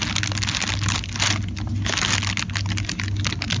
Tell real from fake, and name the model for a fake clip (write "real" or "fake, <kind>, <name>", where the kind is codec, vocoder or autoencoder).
real